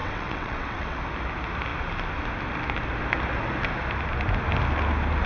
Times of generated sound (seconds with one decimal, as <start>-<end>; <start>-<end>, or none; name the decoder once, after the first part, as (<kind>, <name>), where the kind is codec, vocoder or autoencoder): 0.0-1.0 (vocoder, WaveNeXt)